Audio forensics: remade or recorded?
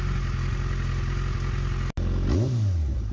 recorded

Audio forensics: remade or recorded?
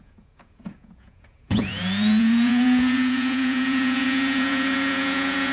remade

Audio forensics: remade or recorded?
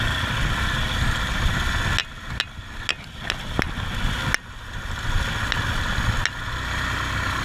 recorded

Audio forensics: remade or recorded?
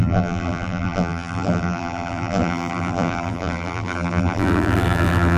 remade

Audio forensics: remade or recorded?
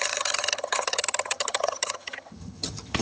remade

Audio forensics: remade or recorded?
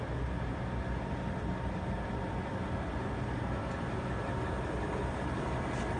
recorded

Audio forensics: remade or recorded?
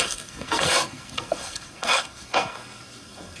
remade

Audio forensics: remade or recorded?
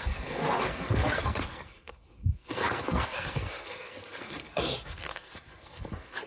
remade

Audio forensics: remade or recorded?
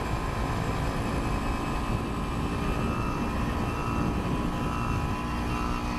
recorded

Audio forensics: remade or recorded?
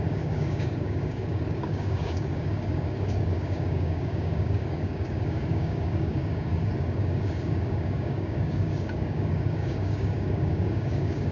remade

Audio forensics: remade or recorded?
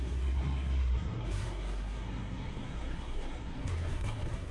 remade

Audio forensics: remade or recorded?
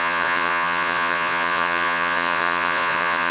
remade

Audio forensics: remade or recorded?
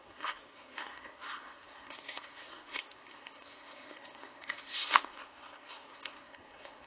remade